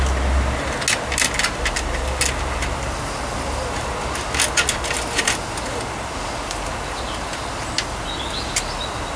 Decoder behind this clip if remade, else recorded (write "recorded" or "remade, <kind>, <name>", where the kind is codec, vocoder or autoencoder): recorded